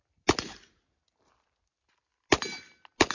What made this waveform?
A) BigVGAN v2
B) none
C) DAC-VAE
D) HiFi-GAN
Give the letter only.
B